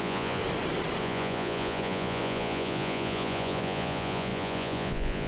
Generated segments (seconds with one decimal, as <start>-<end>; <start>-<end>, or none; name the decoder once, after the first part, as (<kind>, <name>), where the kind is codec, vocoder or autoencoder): 0.0-0.4 (vocoder, Vocos); 1.0-5.3